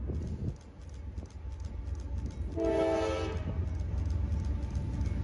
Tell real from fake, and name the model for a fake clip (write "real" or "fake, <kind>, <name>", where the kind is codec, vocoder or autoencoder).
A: real